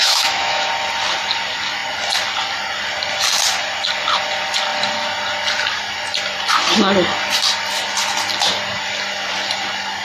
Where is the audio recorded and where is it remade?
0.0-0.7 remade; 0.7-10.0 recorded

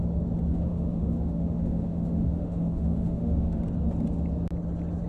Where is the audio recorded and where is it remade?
0.0-0.5 recorded; 0.5-3.6 remade; 3.6-5.1 recorded